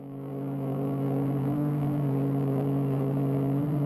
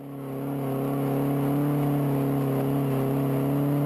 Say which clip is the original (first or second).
second